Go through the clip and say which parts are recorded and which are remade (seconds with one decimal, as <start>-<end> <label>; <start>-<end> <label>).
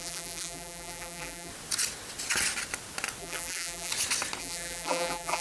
0.0-1.5 remade; 1.5-3.2 recorded; 3.2-3.9 remade; 3.9-4.4 recorded; 4.4-5.4 remade